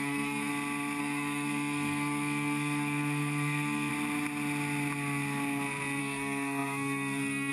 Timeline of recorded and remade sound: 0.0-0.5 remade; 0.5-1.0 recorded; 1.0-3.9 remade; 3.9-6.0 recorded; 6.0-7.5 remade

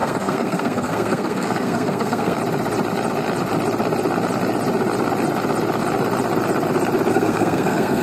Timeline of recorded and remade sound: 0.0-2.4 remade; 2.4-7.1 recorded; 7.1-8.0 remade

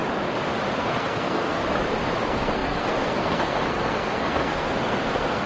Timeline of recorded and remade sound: 0.0-0.8 recorded; 0.8-1.6 remade; 1.6-2.2 recorded; 2.2-5.5 remade